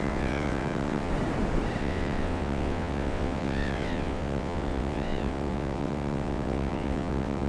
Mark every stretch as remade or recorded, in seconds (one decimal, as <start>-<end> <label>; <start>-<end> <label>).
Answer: 0.0-1.1 remade; 1.1-1.8 recorded; 1.8-7.5 remade